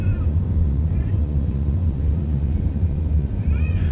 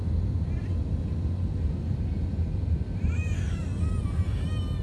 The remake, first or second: first